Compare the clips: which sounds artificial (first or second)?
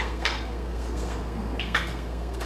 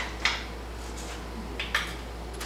first